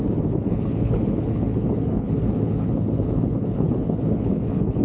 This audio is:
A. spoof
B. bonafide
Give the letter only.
A